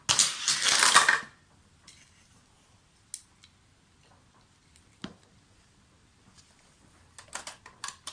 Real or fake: real